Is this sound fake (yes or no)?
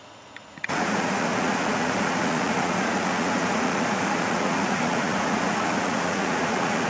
yes